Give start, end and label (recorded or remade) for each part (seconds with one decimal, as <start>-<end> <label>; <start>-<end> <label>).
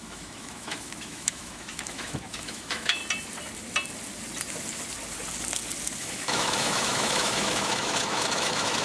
0.0-3.0 remade; 3.0-6.0 recorded; 6.0-8.8 remade